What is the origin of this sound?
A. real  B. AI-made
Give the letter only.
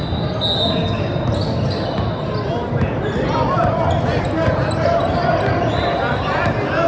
A